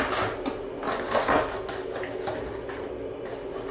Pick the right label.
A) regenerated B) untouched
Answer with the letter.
B